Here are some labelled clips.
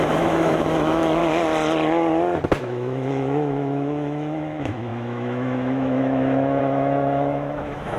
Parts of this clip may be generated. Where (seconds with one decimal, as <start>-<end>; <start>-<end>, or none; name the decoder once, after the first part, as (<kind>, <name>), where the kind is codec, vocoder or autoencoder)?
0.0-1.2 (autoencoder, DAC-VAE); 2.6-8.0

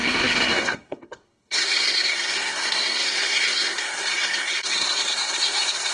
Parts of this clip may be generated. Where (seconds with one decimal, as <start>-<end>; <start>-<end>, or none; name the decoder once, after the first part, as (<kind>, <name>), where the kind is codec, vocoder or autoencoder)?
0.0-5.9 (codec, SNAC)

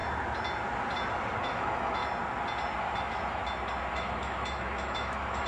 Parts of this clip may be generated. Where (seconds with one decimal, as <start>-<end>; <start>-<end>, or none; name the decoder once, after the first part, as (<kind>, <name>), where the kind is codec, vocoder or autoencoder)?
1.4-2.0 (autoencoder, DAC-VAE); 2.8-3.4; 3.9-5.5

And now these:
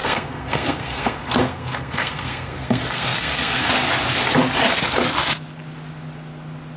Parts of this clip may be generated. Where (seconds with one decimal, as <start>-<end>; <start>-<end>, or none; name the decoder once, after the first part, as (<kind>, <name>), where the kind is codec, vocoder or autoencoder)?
0.0-3.7 (codec, SNAC)